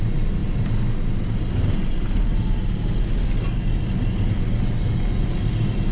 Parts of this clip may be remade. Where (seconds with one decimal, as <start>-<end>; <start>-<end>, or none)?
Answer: none